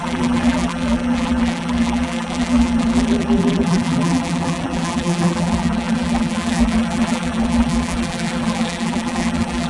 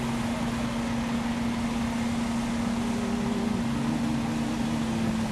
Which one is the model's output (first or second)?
first